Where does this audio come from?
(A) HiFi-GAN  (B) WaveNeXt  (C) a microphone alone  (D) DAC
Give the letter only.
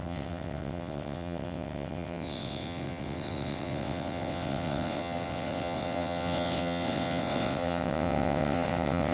B